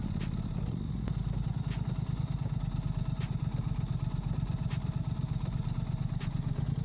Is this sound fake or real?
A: real